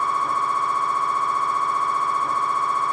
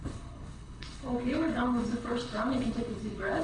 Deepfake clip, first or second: second